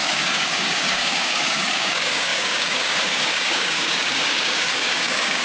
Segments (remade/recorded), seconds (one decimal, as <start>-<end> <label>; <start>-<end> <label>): 0.0-5.4 remade